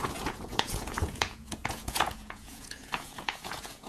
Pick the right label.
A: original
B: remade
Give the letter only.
B